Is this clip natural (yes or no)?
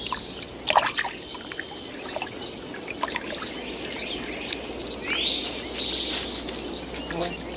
yes